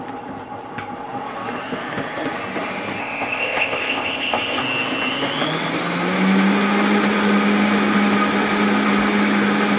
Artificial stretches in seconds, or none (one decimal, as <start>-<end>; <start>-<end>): 3.0-4.6